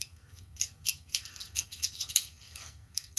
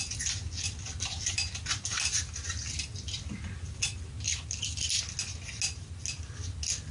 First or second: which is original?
second